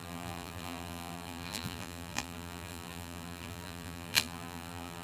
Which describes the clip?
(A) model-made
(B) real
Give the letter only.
A